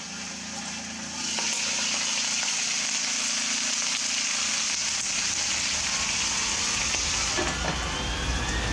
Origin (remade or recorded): recorded